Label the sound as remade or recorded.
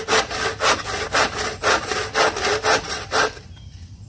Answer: recorded